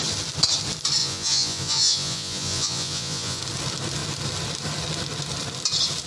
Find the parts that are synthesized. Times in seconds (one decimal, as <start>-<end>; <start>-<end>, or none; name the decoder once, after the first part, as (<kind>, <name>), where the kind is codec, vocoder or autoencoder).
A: 1.0-3.4 (vocoder, Vocos)